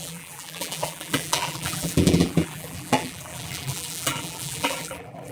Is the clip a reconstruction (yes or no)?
yes